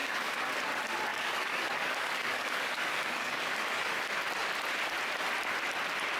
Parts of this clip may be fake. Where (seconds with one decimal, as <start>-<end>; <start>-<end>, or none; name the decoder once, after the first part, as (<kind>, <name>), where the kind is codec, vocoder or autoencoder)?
0.0-0.6 (codec, DAC); 1.1-4.0